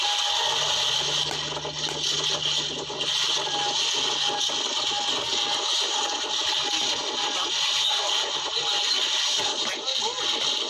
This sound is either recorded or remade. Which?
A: recorded